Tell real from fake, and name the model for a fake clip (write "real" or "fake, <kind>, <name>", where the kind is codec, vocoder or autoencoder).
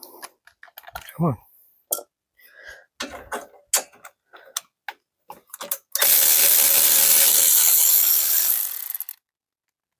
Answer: real